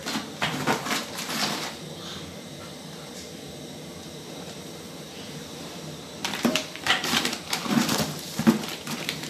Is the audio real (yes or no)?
no